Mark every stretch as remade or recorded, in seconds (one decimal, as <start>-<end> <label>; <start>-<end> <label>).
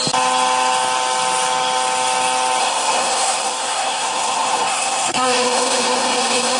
0.0-2.6 recorded; 2.6-6.6 remade